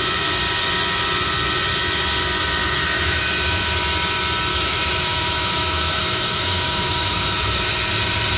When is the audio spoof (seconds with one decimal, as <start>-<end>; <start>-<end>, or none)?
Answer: 2.6-3.2; 4.5-7.8